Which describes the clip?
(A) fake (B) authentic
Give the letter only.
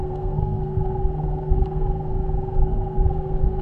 A